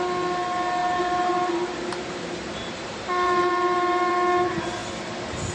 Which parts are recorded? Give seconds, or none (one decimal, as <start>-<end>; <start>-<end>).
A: 0.0-0.8; 4.1-5.5